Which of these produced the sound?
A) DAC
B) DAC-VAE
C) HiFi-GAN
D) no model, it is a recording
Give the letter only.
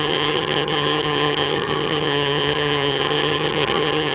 C